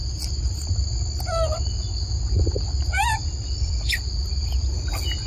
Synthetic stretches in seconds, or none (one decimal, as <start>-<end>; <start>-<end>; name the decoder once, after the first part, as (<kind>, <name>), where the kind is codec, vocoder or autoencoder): none